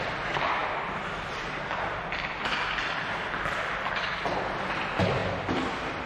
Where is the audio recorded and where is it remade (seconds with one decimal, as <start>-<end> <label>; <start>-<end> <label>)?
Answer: 0.0-5.2 recorded; 5.2-6.1 remade

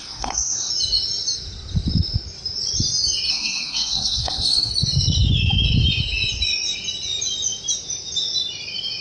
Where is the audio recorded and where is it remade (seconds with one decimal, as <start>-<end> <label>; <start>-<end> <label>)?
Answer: 0.0-0.7 remade; 0.7-3.3 recorded; 3.3-4.7 remade; 4.7-9.0 recorded

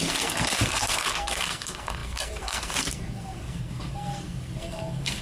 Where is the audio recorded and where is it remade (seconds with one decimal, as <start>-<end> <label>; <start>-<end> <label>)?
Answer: 0.0-5.2 remade

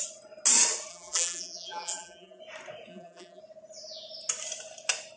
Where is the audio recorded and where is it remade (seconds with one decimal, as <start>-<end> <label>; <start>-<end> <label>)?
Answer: 0.0-0.9 recorded; 0.9-2.4 remade; 2.4-2.9 recorded; 2.9-3.4 remade; 3.4-5.2 recorded